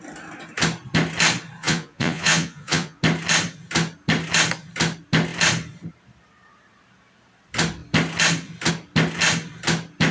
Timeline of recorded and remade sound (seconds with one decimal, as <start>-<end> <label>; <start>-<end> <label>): 0.0-1.6 recorded; 1.6-3.0 remade; 3.0-10.1 recorded